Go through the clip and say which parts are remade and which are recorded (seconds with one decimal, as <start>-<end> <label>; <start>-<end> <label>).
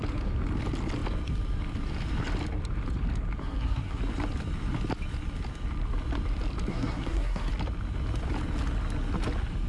0.0-3.4 recorded; 3.4-4.0 remade; 4.0-6.7 recorded; 6.7-7.5 remade; 7.5-9.7 recorded